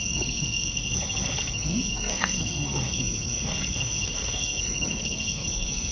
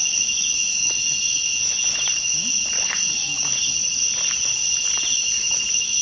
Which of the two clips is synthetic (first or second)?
first